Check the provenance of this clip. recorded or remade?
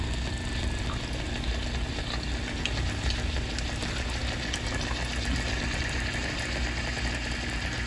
recorded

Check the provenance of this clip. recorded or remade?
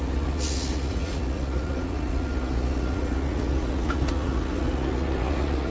remade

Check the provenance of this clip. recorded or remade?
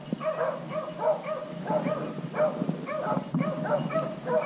recorded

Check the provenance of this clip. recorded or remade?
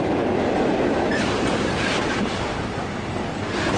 recorded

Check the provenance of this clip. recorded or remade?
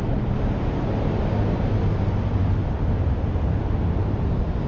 recorded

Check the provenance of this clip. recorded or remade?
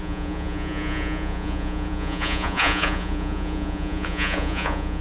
remade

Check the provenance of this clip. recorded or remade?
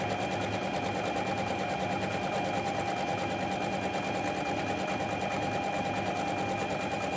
recorded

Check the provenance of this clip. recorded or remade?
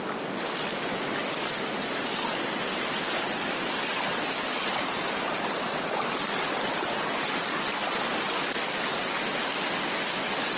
recorded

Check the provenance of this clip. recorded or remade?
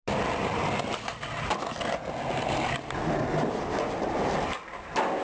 recorded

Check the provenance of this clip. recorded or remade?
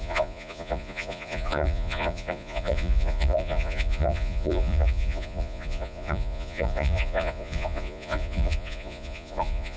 remade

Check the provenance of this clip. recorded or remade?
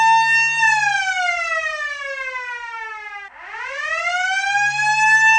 recorded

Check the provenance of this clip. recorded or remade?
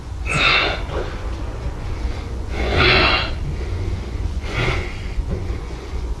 remade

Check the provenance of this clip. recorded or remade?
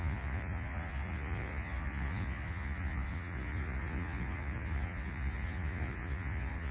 remade